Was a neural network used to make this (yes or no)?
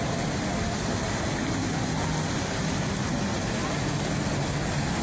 no